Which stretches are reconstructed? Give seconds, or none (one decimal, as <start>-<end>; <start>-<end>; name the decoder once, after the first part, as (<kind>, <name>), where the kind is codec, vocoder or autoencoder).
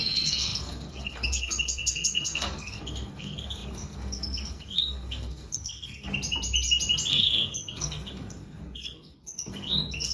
0.0-6.1 (codec, SNAC); 7.1-10.1